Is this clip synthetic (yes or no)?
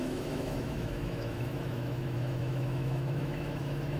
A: yes